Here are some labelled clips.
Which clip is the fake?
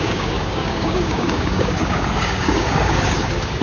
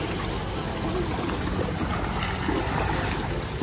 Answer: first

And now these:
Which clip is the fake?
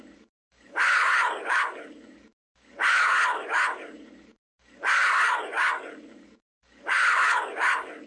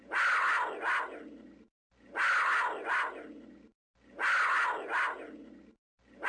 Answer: first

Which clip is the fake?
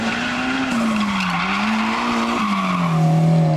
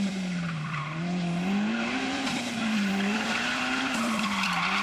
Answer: second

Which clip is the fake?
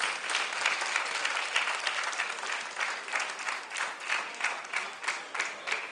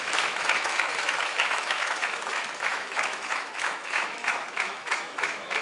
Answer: second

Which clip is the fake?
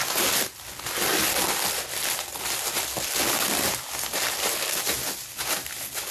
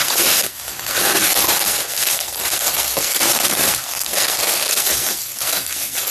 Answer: second